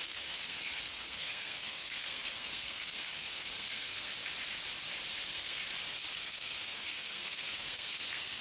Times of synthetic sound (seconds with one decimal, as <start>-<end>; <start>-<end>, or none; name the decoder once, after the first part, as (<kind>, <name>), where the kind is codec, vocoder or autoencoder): 0.0-4.1 (codec, SNAC); 5.1-5.6; 6.1-8.4